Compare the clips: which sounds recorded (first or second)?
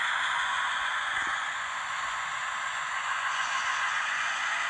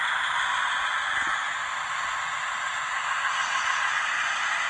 second